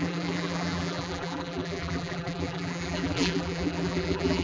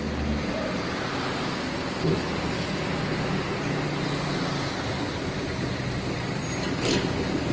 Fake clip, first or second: first